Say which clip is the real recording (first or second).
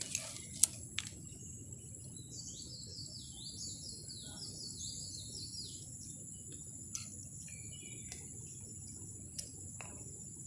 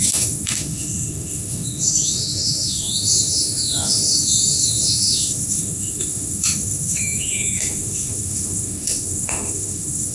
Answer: first